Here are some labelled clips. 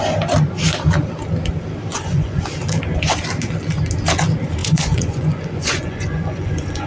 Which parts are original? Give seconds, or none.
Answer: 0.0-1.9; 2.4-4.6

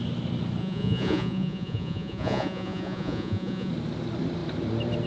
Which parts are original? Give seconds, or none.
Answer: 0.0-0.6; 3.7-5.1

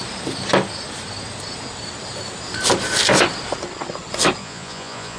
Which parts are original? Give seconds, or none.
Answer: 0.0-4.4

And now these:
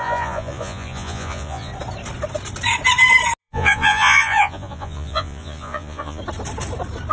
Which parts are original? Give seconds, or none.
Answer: 1.7-3.4; 6.2-7.1

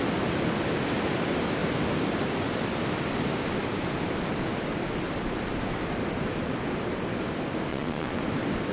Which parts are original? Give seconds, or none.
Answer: 0.0-7.7; 8.2-8.7

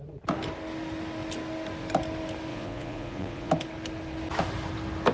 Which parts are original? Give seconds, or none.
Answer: 0.0-2.5; 3.5-5.1